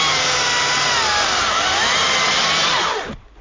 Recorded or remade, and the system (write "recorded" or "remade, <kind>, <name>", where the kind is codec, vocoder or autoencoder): recorded